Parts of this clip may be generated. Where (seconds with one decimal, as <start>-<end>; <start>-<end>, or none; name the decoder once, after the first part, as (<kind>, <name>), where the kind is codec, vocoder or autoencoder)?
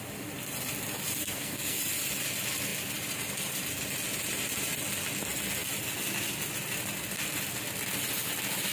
1.2-1.8 (codec, SNAC)